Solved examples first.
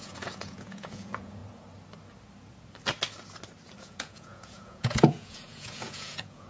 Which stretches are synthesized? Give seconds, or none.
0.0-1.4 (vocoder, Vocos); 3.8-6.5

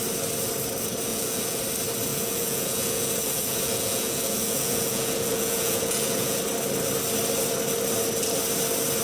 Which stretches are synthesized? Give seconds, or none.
1.1-1.6 (vocoder, Vocos); 2.1-6.4

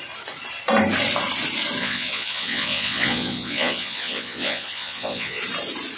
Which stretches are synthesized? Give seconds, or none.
1.8-5.4 (vocoder, Vocos)